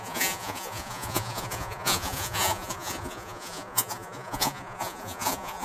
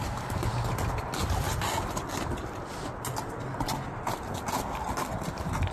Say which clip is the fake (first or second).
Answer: first